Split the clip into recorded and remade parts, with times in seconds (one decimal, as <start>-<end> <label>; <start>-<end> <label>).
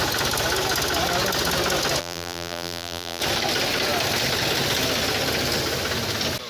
0.0-2.0 recorded; 2.0-3.2 remade; 3.2-6.5 recorded